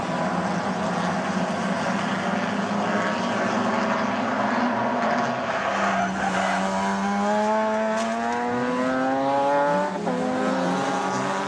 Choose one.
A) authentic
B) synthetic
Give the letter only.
A